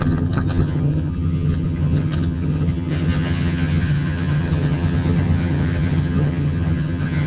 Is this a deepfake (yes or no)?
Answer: yes